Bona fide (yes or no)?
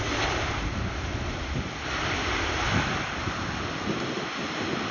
yes